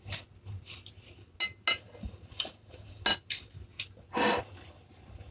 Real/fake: real